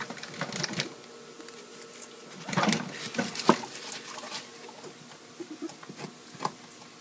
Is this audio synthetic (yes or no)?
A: no